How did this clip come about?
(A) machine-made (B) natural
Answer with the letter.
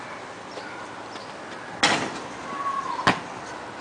B